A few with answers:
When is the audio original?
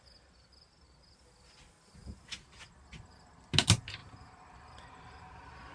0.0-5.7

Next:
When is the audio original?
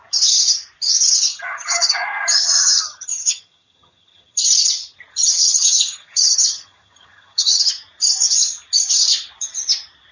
0.0-1.3; 4.4-5.1; 7.6-10.1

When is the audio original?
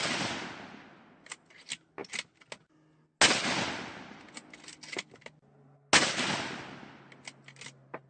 0.0-8.1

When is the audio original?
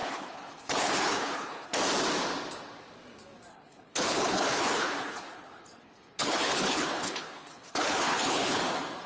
1.8-3.5; 8.6-9.1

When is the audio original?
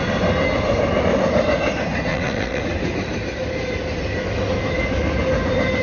0.0-2.1; 2.6-5.8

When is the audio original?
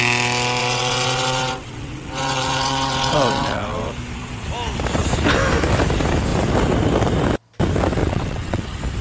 0.0-0.6; 3.9-8.0; 8.6-9.0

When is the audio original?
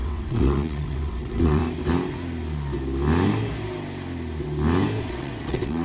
1.6-5.0